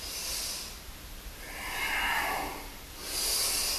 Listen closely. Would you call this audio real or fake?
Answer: real